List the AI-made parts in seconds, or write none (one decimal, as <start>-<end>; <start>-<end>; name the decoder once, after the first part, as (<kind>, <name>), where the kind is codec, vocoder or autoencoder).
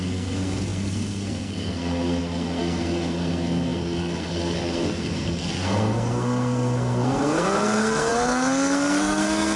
0.0-9.6 (codec, SNAC)